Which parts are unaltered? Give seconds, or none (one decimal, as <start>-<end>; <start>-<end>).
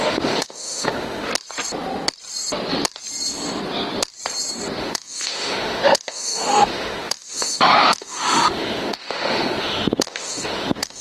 1.3-4.8